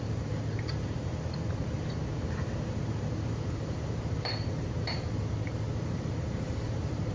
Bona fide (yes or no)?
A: no